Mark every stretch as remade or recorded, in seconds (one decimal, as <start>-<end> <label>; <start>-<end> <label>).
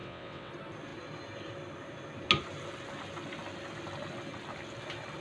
0.0-0.5 remade; 0.5-5.2 recorded